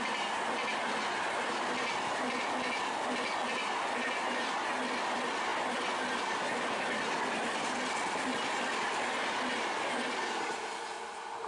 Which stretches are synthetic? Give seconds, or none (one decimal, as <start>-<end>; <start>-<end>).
none